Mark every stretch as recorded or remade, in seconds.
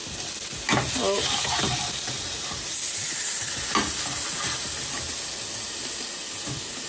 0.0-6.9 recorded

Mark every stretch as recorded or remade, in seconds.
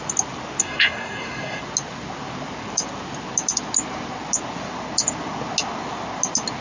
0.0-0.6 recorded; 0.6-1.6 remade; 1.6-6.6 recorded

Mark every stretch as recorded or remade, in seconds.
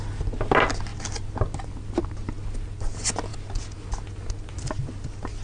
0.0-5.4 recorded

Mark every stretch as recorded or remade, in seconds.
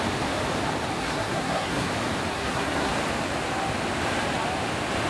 0.0-1.0 recorded; 1.0-1.9 remade; 1.9-2.3 recorded; 2.3-2.9 remade; 2.9-5.1 recorded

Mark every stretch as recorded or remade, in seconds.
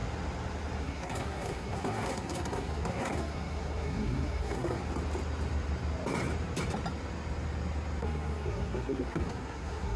0.0-0.8 recorded; 0.8-4.8 remade; 4.8-8.0 recorded; 8.0-10.0 remade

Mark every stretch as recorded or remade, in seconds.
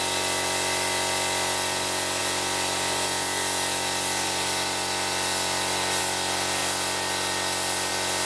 0.0-8.3 recorded